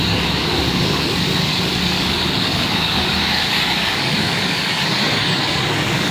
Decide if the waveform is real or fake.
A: fake